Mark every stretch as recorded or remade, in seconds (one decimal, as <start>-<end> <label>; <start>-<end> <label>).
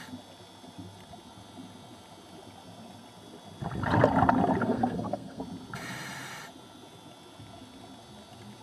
0.0-4.6 recorded; 4.6-5.4 remade; 5.4-8.6 recorded